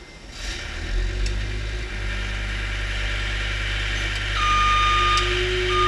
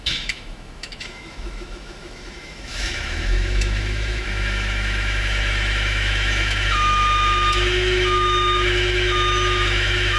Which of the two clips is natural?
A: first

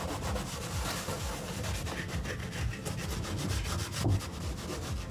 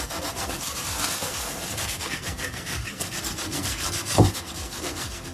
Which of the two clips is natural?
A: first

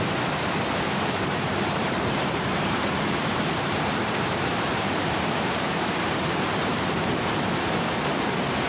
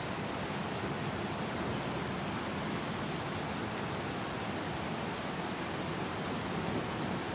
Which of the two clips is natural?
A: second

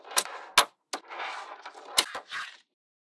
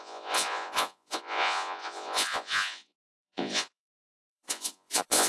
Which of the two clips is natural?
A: first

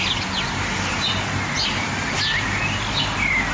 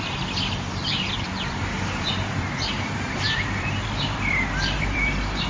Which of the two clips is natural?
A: first